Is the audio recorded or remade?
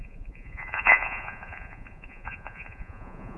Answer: remade